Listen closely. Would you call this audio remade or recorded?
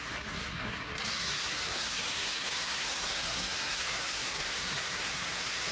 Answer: remade